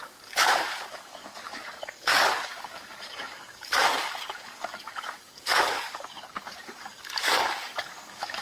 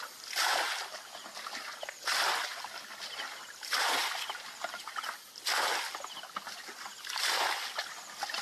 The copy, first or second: first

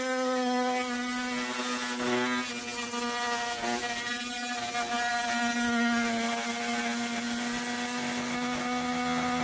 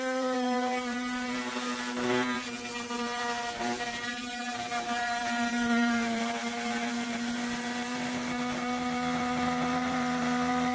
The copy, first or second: second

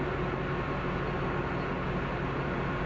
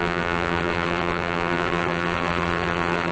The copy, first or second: second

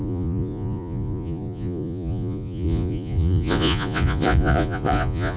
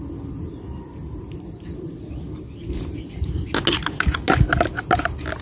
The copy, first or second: first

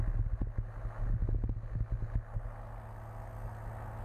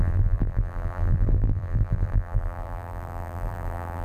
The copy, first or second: second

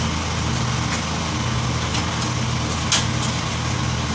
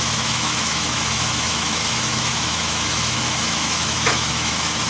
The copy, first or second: second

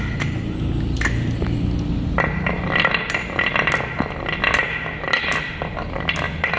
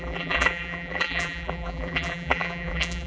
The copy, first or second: second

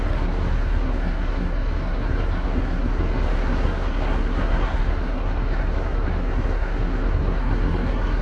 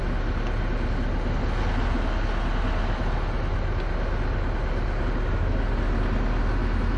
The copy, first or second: first